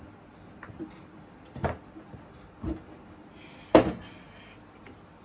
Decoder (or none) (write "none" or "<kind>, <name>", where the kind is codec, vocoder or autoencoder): none